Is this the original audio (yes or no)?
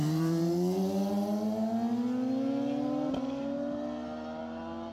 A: yes